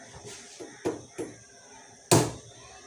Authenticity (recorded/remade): recorded